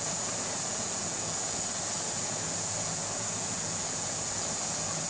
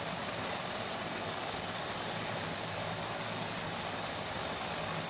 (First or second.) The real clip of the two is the second